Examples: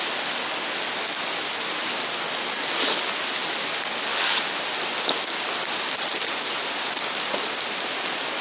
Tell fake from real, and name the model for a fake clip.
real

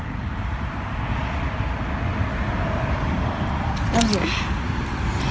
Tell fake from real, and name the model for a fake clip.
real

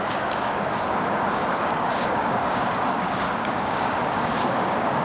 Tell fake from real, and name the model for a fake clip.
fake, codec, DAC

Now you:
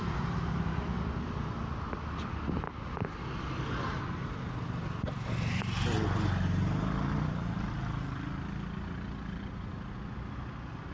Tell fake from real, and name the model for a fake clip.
real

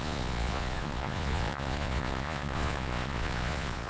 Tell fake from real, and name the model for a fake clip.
fake, vocoder, Vocos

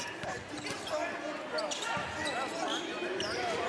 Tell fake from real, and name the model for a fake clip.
real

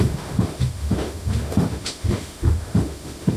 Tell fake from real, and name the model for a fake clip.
fake, autoencoder, DAC-VAE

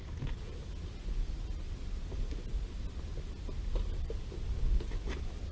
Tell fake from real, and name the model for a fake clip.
real